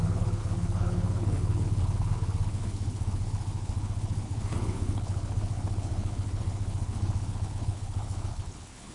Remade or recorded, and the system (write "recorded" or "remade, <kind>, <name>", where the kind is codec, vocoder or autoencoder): remade, codec, HILCodec